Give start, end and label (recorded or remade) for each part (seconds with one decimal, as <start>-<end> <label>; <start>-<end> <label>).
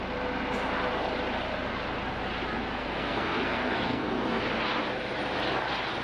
0.0-2.8 recorded; 2.8-4.4 remade; 4.4-6.0 recorded